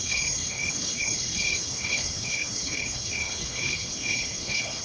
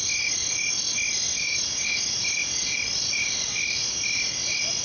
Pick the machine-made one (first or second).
first